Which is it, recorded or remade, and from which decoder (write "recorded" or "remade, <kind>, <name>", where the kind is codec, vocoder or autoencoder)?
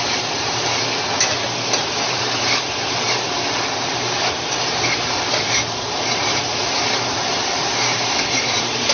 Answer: remade, vocoder, BigVGAN v2